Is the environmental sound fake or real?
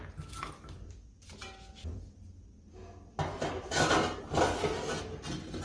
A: real